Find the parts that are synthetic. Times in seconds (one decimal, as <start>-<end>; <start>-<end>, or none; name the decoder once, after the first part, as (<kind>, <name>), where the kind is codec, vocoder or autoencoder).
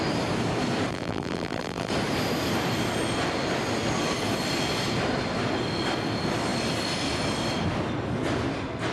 0.9-1.9 (vocoder, BigVGAN v2)